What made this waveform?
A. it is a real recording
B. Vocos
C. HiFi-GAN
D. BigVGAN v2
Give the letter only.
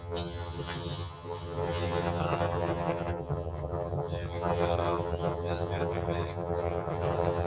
C